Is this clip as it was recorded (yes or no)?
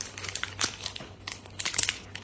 no